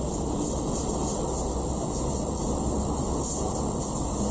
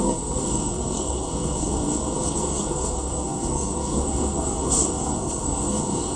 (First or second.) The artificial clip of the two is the second